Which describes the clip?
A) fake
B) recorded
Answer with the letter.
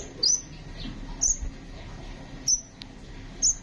B